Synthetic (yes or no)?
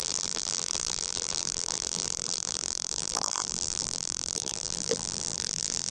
yes